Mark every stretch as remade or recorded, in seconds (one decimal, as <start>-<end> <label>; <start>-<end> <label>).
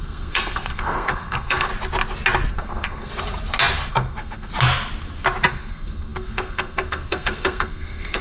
0.0-1.7 remade; 1.7-2.5 recorded; 2.5-3.1 remade; 3.1-3.9 recorded; 3.9-4.5 remade; 4.5-5.5 recorded; 5.5-8.2 remade